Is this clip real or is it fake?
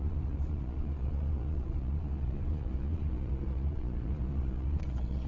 fake